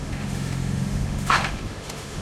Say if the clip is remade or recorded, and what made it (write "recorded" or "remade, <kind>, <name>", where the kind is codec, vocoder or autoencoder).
remade, autoencoder, DAC-VAE